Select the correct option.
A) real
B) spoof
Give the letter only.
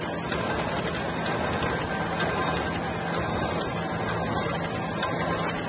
A